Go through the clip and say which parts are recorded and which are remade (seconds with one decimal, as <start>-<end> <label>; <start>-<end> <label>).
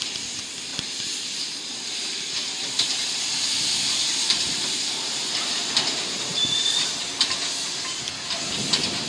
0.0-0.7 recorded; 0.7-3.6 remade; 3.6-4.1 recorded; 4.1-6.9 remade; 6.9-9.1 recorded